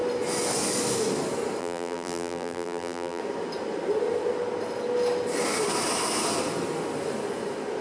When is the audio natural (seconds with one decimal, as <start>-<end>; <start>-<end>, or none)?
0.0-1.6; 3.2-7.8